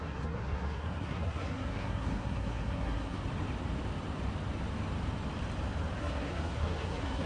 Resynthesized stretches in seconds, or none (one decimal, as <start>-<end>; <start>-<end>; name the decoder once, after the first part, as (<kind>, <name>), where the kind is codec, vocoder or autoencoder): 0.0-3.2 (codec, SNAC); 6.0-7.3